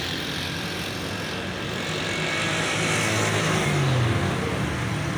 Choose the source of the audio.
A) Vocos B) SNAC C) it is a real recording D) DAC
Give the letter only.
C